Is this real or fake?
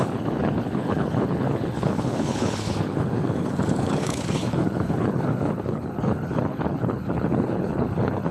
fake